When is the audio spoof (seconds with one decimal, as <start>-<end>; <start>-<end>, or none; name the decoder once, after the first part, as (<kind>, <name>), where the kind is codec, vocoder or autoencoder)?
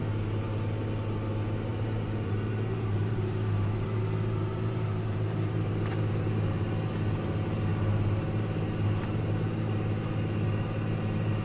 1.7-5.8 (vocoder, BigVGAN v2)